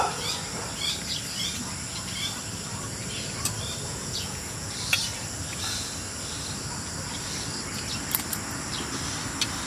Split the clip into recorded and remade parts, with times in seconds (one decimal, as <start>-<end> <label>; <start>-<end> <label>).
0.0-3.9 recorded; 3.9-4.7 remade; 4.7-9.7 recorded